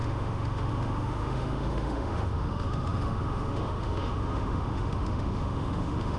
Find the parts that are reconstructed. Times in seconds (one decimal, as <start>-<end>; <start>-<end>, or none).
0.0-6.2